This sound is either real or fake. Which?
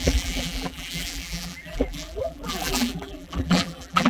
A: fake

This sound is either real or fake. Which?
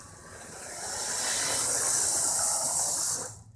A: real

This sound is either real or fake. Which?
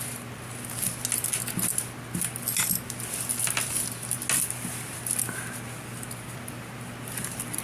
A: real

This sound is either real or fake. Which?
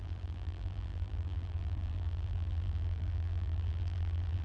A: fake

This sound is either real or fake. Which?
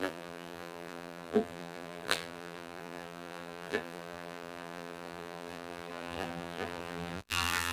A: fake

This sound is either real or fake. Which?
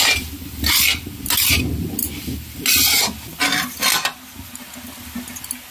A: real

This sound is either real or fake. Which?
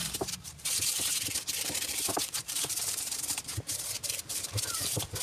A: fake